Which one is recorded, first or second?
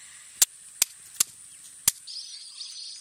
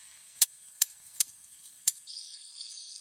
first